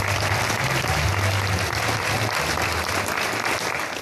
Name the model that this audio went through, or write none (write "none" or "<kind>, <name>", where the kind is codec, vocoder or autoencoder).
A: none